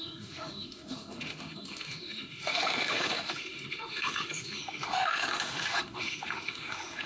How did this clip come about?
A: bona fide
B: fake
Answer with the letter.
B